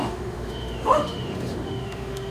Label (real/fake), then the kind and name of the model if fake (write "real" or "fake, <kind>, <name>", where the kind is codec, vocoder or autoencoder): fake, autoencoder, DAC-VAE